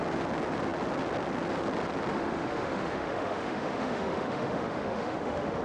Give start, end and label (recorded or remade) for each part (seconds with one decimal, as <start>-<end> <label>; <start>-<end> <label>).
0.0-2.1 recorded; 2.1-5.6 remade